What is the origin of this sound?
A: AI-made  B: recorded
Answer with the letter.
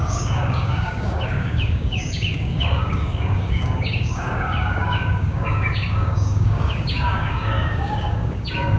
A